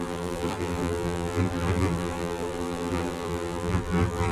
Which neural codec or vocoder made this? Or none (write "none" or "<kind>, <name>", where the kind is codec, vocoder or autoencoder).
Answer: vocoder, BigVGAN v2